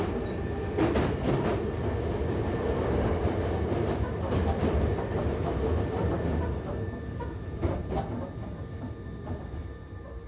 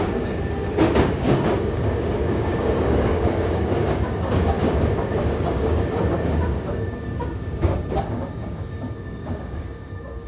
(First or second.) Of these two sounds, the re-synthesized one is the second